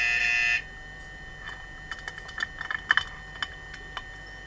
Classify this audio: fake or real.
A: real